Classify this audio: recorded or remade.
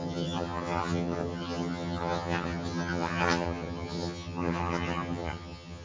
remade